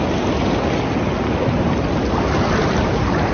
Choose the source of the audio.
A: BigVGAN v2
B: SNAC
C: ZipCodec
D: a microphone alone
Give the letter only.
D